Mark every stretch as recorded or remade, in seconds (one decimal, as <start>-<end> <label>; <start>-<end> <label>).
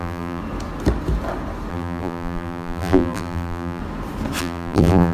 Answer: 0.0-0.4 remade; 0.4-1.7 recorded; 1.7-3.8 remade; 3.8-4.4 recorded; 4.4-5.1 remade